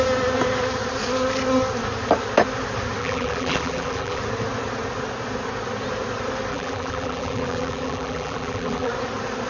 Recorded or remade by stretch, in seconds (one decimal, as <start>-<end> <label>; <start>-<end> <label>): 0.0-3.0 recorded; 3.0-4.2 remade; 4.2-6.5 recorded; 6.5-8.9 remade; 8.9-9.5 recorded